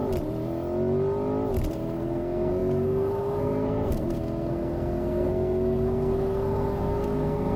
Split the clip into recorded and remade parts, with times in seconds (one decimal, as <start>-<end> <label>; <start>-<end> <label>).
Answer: 0.0-1.7 recorded; 1.7-7.6 remade